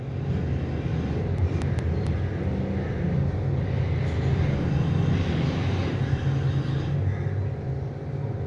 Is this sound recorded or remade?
recorded